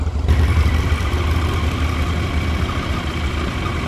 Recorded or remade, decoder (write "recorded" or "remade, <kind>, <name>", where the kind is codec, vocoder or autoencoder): recorded